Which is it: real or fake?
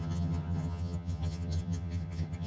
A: fake